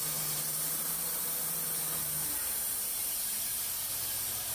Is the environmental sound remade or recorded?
remade